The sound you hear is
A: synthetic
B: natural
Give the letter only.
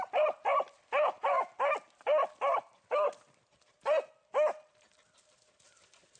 B